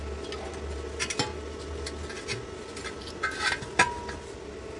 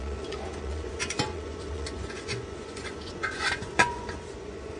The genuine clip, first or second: first